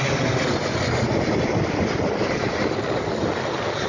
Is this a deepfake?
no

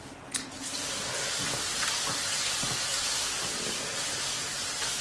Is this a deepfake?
no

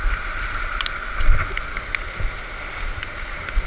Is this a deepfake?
no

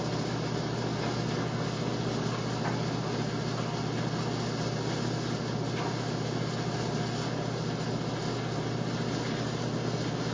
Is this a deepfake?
no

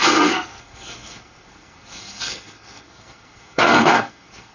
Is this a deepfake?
yes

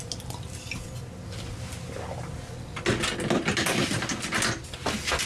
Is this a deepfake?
no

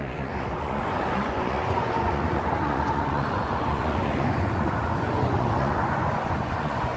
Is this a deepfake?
yes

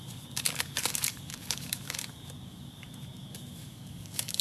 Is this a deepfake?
yes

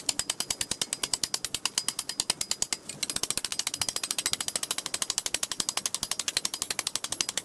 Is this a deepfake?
no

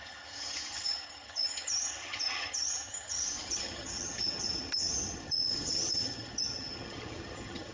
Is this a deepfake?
yes